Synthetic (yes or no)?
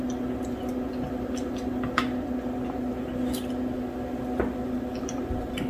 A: no